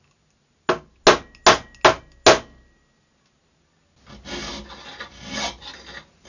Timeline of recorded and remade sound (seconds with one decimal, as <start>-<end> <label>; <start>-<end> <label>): 0.0-6.3 recorded